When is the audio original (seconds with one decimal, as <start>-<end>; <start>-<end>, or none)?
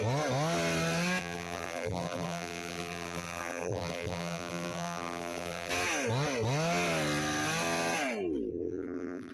0.0-1.2; 5.7-8.5